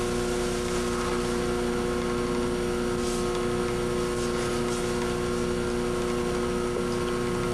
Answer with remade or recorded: recorded